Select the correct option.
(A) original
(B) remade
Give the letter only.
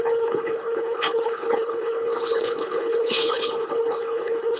B